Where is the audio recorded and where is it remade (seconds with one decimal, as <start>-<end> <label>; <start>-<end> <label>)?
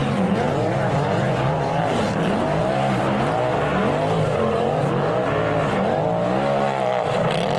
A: 0.0-1.8 remade; 1.8-7.6 recorded